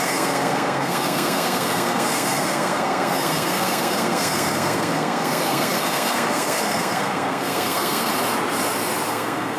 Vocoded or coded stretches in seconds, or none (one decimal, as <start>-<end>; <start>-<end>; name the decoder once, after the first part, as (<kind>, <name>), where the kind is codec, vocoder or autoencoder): 0.0-8.1 (codec, SNAC); 9.1-9.6